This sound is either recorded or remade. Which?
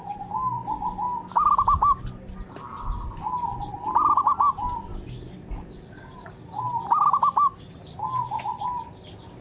recorded